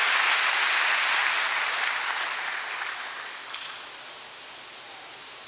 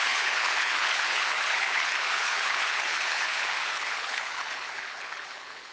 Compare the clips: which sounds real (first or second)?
first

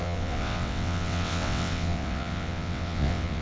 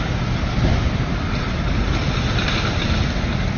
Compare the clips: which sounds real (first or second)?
second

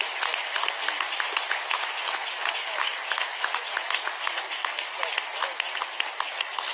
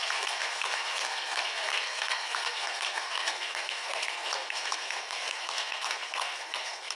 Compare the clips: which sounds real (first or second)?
first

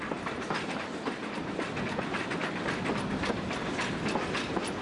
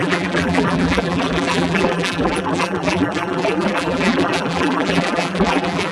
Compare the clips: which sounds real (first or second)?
first